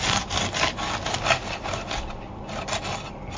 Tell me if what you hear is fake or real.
real